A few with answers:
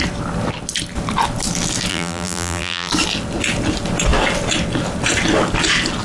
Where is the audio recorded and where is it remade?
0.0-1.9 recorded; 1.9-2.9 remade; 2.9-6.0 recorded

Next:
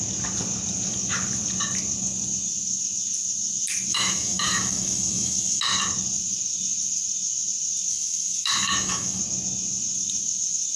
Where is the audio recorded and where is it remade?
0.0-3.9 recorded; 3.9-5.6 remade; 5.6-7.9 recorded; 7.9-9.2 remade; 9.2-10.8 recorded